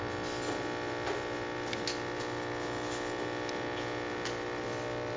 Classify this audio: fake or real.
real